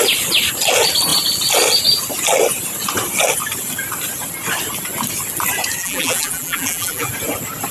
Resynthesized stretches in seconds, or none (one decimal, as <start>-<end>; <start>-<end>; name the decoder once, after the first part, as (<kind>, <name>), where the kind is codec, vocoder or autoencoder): 5.8-7.1 (vocoder, BigVGAN v2)